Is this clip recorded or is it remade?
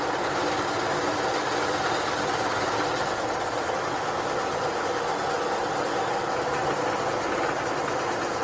recorded